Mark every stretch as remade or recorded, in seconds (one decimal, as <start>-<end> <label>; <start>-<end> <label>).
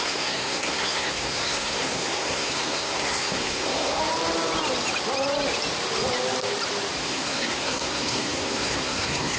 0.0-4.0 remade; 4.0-7.0 recorded; 7.0-9.4 remade